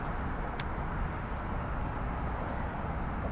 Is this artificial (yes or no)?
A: no